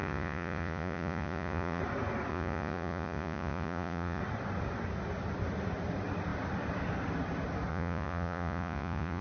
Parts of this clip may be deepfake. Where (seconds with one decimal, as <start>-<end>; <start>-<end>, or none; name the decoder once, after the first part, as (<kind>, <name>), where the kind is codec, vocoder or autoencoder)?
0.0-1.8 (vocoder, Vocos); 2.3-4.2; 7.7-9.2